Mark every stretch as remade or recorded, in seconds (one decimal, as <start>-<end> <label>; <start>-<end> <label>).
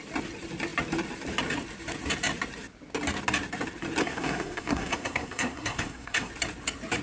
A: 0.0-4.0 recorded; 4.0-6.3 remade; 6.3-7.0 recorded